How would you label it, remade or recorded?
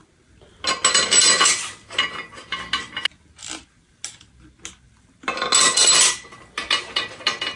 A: recorded